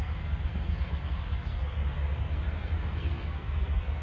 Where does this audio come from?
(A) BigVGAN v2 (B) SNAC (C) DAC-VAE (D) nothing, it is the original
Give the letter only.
B